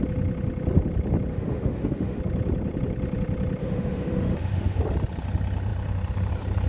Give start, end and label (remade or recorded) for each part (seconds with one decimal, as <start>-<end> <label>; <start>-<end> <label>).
0.0-1.3 recorded; 1.3-2.2 remade; 2.2-3.6 recorded; 3.6-4.8 remade; 4.8-6.7 recorded